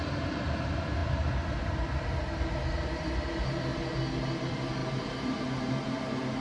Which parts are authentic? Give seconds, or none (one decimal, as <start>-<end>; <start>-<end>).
3.7-4.3